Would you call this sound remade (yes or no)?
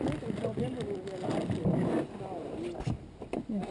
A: no